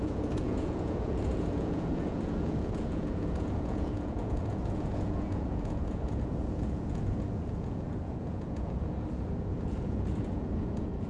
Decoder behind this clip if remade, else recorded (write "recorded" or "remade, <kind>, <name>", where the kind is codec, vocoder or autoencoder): remade, vocoder, Vocos